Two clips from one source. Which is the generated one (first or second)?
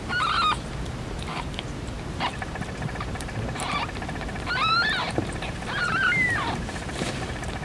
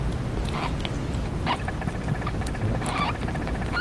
first